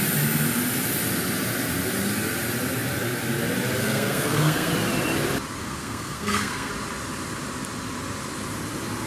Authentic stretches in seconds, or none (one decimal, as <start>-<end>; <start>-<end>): 0.0-3.8; 4.7-5.6; 6.7-9.1